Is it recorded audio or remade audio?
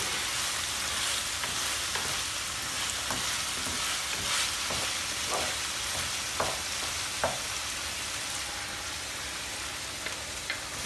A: recorded